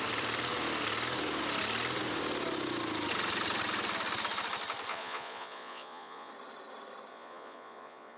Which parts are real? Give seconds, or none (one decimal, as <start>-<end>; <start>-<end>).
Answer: 0.0-4.9; 6.3-7.1